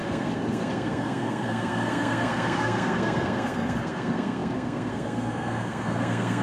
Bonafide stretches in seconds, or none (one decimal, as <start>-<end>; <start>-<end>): none